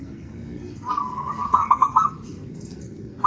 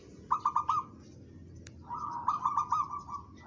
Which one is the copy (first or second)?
first